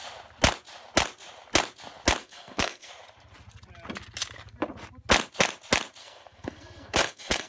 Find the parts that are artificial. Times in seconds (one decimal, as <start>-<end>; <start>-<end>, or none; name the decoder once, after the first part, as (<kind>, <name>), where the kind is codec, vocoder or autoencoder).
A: 2.2-2.9 (codec, SNAC); 6.0-7.5